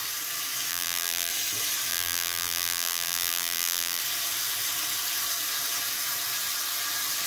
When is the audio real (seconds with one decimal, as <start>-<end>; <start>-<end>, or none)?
0.0-0.7; 1.3-1.9; 4.0-7.3